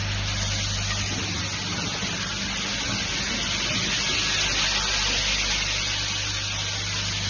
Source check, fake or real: real